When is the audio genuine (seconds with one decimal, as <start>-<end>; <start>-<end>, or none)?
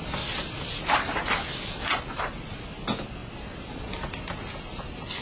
0.0-5.2